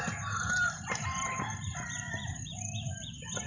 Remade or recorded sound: remade